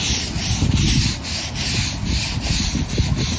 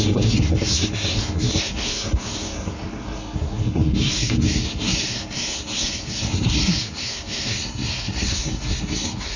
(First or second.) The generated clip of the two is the second